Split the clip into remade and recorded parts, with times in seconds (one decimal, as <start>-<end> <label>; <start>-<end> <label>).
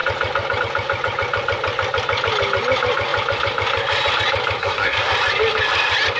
0.0-4.6 recorded; 4.6-5.1 remade; 5.1-6.2 recorded